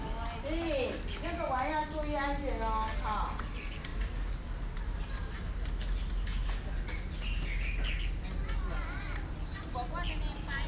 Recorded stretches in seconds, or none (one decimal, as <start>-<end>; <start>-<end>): 0.0-10.7